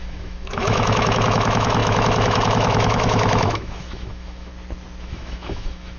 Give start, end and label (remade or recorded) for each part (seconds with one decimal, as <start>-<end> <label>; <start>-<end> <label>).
0.0-4.5 remade; 4.5-5.0 recorded; 5.0-6.0 remade